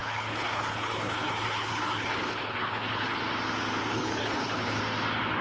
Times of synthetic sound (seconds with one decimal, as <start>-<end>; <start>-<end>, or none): 0.0-3.2; 3.9-4.8

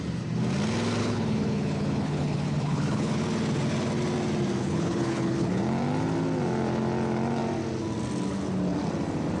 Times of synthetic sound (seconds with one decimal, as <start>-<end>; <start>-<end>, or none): 1.0-3.2; 4.6-5.6

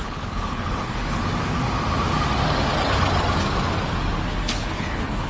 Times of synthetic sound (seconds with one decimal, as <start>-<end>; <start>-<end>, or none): 0.0-1.2; 4.4-5.3

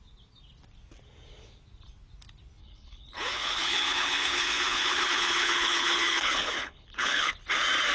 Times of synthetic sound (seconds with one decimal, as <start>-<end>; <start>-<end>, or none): 2.6-7.3

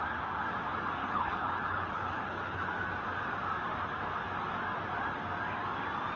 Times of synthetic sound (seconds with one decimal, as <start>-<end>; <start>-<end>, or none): 1.0-2.7

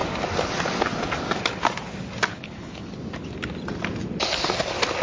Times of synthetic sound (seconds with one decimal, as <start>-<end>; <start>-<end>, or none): 2.3-2.9